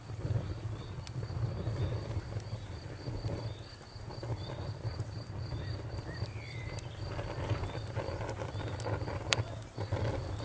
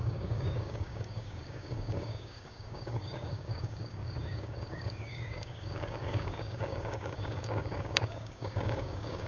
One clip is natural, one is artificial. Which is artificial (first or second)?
second